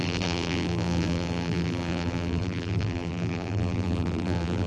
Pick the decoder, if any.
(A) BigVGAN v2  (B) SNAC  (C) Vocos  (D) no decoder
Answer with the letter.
A